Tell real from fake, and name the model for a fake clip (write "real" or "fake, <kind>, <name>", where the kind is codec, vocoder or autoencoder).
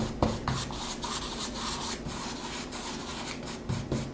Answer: real